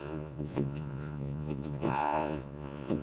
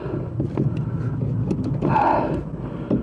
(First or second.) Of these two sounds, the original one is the second